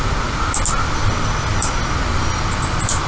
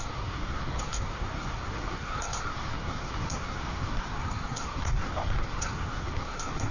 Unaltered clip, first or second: first